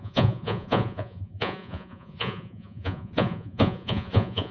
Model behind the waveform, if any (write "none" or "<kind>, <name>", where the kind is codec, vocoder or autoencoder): vocoder, Vocos